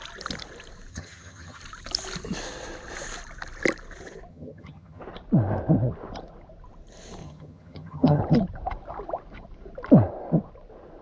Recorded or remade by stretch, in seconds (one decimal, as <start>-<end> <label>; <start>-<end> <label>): 0.0-0.9 recorded; 0.9-1.6 remade; 1.6-4.3 recorded; 4.3-5.0 remade; 5.0-7.2 recorded; 7.2-8.2 remade; 8.2-11.0 recorded